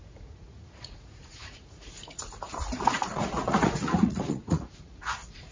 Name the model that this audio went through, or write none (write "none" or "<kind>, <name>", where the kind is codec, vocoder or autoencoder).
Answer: vocoder, Vocos